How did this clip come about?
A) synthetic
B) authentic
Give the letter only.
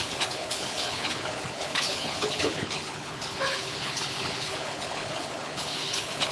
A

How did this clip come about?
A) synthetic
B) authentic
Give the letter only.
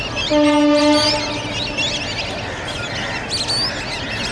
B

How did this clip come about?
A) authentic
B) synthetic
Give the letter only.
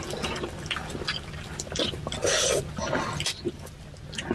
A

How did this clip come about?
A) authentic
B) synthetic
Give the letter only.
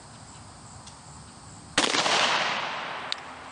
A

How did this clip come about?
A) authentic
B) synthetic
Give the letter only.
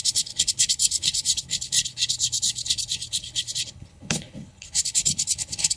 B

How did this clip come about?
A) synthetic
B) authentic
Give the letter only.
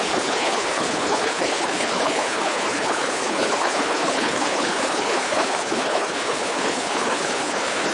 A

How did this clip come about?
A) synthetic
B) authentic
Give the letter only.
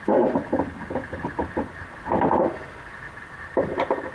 B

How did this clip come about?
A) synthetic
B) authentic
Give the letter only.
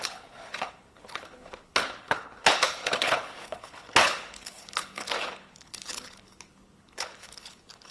A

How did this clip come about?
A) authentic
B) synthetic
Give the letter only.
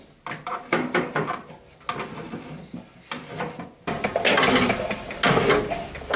A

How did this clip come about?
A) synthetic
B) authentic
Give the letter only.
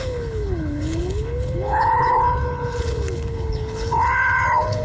A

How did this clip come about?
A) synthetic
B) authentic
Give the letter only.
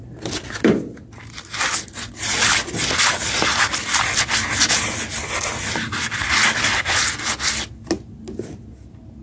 B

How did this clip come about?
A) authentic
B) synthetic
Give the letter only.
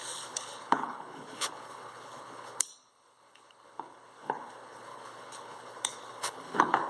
B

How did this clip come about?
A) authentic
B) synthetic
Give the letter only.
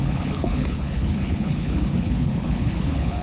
B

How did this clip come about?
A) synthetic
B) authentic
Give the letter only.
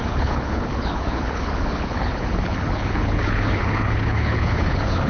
A